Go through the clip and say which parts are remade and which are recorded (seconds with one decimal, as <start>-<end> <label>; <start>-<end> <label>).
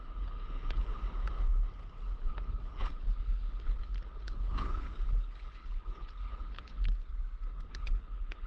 0.0-1.0 remade; 1.0-2.2 recorded; 2.2-7.1 remade; 7.1-7.7 recorded; 7.7-8.5 remade